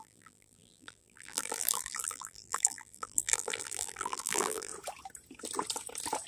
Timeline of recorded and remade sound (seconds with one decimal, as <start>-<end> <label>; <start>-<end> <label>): 0.0-4.7 remade; 4.7-6.3 recorded